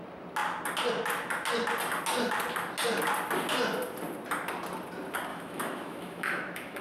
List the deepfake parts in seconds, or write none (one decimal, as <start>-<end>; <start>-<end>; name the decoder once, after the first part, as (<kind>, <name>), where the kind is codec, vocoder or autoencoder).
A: 5.3-6.8 (autoencoder, DAC-VAE)